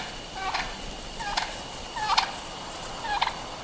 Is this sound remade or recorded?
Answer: recorded